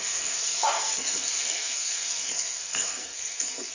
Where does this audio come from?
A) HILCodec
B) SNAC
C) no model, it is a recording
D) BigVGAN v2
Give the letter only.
B